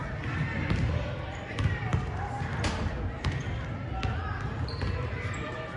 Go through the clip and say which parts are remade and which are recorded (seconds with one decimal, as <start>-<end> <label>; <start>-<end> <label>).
0.0-5.8 recorded